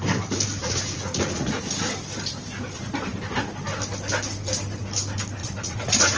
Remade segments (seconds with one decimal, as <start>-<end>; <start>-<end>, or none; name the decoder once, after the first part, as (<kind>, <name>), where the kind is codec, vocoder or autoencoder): 0.6-1.6 (vocoder, Vocos); 5.4-6.2